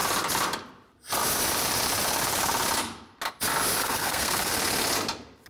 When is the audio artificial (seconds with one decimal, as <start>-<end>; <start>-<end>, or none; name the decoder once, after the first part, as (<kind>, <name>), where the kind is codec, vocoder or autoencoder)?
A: 3.8-4.5 (codec, SNAC)